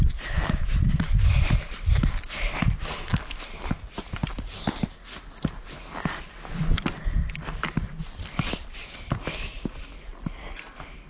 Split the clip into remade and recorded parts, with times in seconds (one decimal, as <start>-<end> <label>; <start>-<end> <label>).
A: 0.0-11.1 recorded